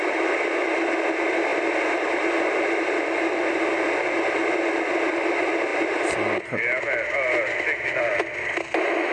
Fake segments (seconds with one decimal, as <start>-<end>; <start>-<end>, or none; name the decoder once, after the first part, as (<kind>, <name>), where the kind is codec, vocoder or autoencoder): none